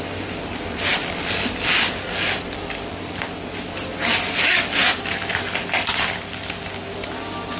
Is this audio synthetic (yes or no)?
no